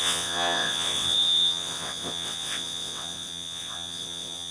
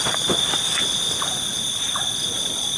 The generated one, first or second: first